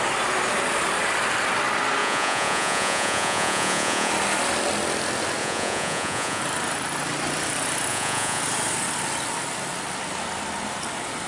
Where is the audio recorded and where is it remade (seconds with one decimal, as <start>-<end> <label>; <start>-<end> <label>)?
0.0-2.0 recorded; 2.0-4.1 remade; 4.1-5.4 recorded; 5.4-6.4 remade; 6.4-7.9 recorded; 7.9-8.4 remade; 8.4-11.3 recorded